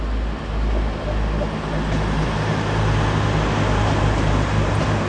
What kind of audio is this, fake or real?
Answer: real